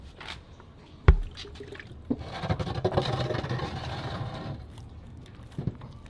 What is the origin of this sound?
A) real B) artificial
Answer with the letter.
A